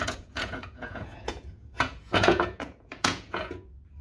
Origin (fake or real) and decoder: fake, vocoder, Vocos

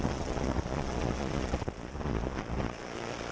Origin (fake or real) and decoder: fake, vocoder, Vocos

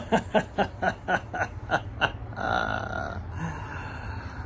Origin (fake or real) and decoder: real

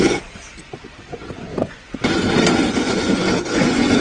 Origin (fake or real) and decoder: fake, vocoder, Vocos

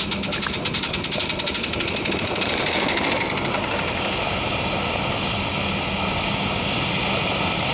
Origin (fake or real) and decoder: real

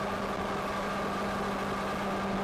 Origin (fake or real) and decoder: real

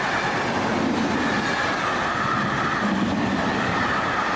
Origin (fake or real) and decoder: real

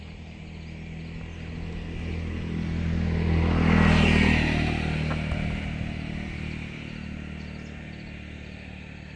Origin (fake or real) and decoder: real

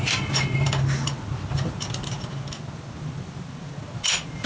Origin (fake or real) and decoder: real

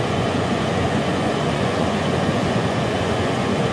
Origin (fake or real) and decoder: fake, vocoder, Vocos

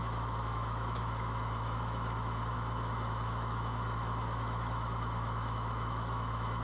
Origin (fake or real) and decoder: fake, autoencoder, DAC-VAE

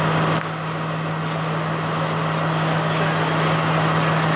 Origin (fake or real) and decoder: real